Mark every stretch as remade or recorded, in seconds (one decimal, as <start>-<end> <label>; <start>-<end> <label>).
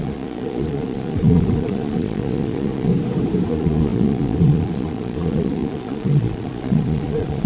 0.0-2.9 remade; 2.9-3.5 recorded; 3.5-7.5 remade